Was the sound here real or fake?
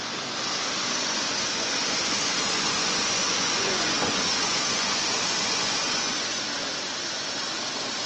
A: fake